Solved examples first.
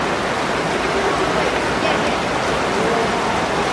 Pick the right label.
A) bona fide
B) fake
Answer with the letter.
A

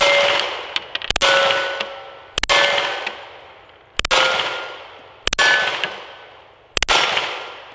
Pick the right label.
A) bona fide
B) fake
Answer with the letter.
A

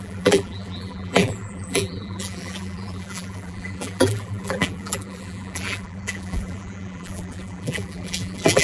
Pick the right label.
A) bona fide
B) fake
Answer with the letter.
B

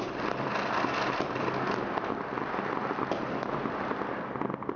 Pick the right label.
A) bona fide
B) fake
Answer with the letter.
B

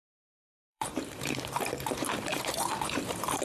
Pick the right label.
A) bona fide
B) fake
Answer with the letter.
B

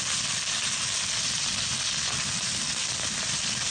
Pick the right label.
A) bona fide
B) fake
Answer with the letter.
A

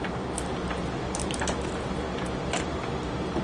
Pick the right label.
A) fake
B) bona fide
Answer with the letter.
B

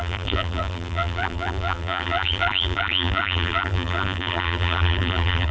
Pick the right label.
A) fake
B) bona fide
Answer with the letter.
A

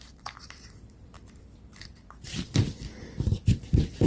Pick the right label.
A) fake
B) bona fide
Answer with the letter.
A